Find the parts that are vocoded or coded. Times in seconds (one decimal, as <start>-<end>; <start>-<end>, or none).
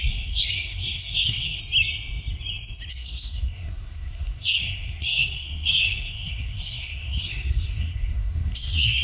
0.0-1.6; 2.9-9.0